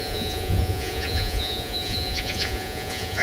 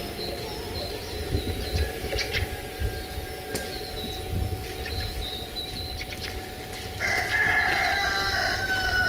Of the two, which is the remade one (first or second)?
first